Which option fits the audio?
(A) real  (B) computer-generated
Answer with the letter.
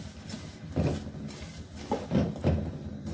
A